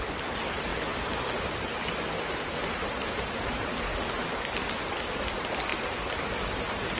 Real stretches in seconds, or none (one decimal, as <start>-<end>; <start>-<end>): 0.0-7.0